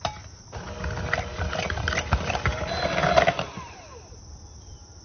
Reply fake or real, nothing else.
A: real